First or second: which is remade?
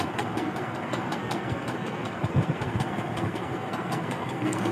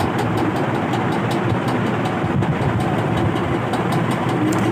first